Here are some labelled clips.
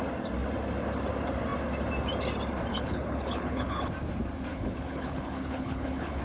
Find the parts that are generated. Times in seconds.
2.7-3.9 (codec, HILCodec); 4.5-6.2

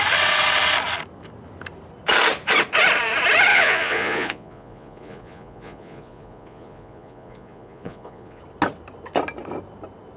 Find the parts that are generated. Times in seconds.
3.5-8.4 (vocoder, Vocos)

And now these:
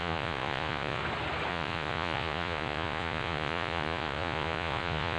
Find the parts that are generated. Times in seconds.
0.0-1.0 (vocoder, Vocos); 1.5-5.2